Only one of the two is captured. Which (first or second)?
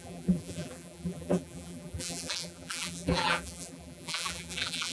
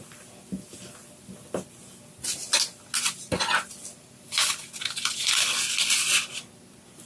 second